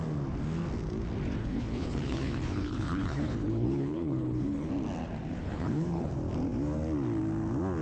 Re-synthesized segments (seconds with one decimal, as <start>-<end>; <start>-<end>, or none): 1.4-4.7; 5.4-6.1